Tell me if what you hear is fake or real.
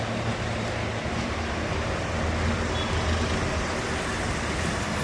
real